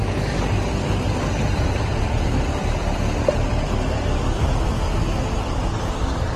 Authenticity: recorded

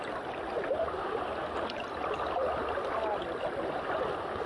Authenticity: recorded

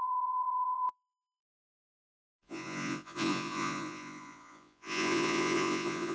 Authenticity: remade